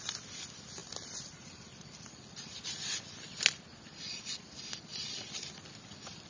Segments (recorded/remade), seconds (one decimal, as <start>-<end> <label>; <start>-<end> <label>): 0.0-0.8 recorded; 0.8-4.6 remade; 4.6-6.3 recorded